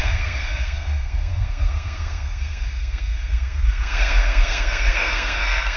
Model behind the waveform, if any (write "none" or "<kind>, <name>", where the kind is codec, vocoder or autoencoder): codec, SNAC